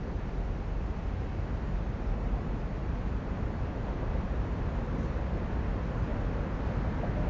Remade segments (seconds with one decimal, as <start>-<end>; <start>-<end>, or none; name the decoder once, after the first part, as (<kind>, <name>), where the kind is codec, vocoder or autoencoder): 2.8-4.5 (vocoder, BigVGAN v2)